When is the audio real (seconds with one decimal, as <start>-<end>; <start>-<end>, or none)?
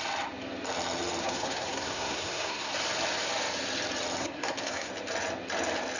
0.0-1.2; 2.7-4.2; 4.9-6.0